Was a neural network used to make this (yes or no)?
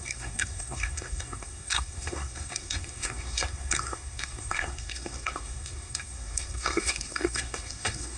yes